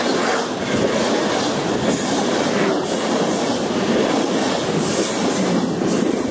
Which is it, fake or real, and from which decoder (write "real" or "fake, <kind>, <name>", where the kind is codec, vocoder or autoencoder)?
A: real